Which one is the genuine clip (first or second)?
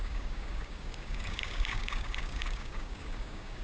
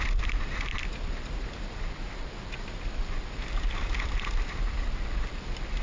second